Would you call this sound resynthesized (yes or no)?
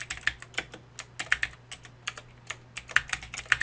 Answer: no